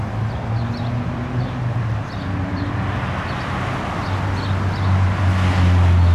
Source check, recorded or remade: recorded